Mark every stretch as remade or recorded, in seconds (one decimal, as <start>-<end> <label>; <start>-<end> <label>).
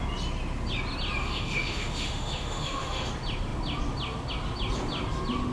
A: 0.0-1.2 recorded; 1.2-3.1 remade; 3.1-5.5 recorded